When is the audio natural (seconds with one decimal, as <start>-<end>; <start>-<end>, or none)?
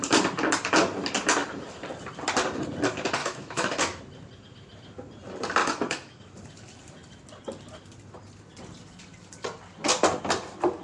0.0-3.2; 4.0-5.6; 6.2-10.8